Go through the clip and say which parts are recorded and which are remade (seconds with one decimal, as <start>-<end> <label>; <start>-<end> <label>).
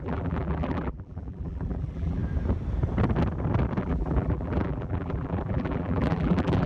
0.0-2.2 remade; 2.2-3.8 recorded; 3.8-6.7 remade